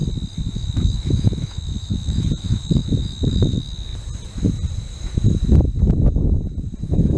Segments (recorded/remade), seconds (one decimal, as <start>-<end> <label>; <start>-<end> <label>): 0.0-0.5 recorded; 0.5-3.9 remade; 3.9-6.8 recorded; 6.8-7.2 remade